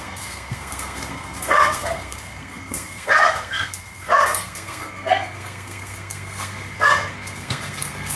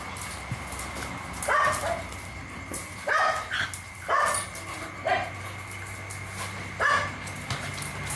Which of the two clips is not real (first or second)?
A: first